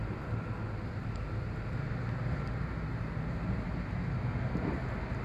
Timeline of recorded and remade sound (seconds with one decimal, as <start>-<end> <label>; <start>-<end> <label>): 0.0-5.2 recorded